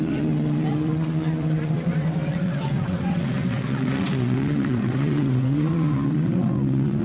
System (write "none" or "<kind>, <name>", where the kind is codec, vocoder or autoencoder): vocoder, WaveNeXt